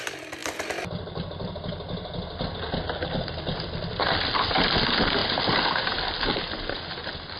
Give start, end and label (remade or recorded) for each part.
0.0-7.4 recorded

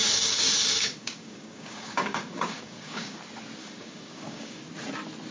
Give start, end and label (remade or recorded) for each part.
0.0-3.2 remade; 3.2-3.6 recorded; 3.6-4.6 remade; 4.6-5.3 recorded

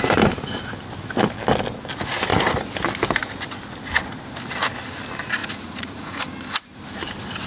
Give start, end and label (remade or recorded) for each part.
0.0-5.4 recorded; 5.4-6.2 remade; 6.2-7.5 recorded